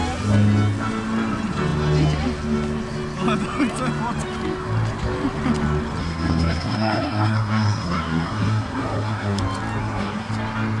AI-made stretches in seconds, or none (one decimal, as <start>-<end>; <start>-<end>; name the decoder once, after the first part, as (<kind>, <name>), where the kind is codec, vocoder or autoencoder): 6.0-9.4 (codec, SNAC); 9.8-10.3